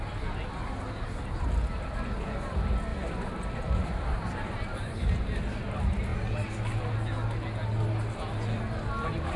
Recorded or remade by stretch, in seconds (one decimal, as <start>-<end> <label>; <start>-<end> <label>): 0.0-2.9 recorded; 2.9-5.4 remade; 5.4-9.4 recorded